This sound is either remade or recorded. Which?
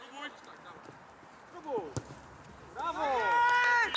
recorded